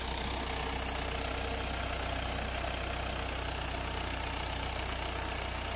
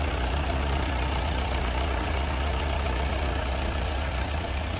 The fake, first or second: second